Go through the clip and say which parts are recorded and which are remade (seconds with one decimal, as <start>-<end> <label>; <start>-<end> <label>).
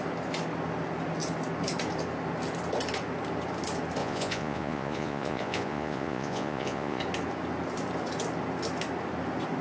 0.0-4.0 recorded; 4.0-7.0 remade; 7.0-9.6 recorded